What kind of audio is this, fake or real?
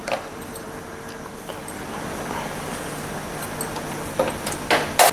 real